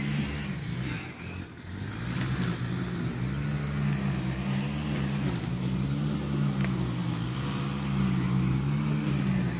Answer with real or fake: real